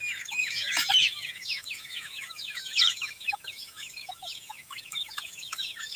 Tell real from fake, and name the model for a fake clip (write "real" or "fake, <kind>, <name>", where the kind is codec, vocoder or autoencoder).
fake, autoencoder, DAC-VAE